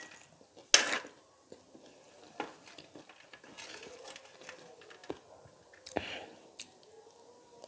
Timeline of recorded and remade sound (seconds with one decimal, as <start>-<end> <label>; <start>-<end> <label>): 0.0-7.7 recorded